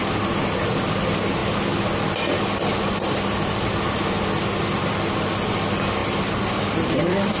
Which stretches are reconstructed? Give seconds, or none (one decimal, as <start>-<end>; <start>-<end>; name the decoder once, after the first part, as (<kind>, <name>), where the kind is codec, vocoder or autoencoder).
6.0-7.4 (vocoder, BigVGAN v2)